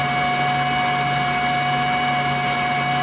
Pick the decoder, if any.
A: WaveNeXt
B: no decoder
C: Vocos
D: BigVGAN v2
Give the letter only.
B